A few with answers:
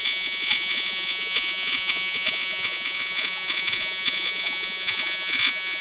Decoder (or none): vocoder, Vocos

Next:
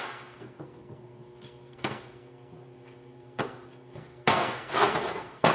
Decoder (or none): codec, SNAC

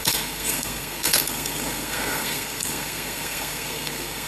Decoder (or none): codec, SNAC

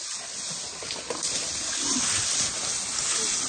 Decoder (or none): none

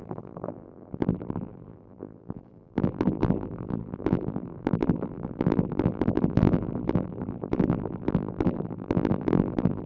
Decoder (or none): vocoder, BigVGAN v2